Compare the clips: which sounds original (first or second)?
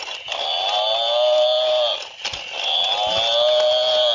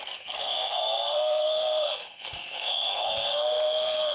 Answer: first